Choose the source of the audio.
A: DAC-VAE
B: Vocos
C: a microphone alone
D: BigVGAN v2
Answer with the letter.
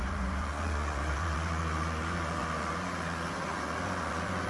B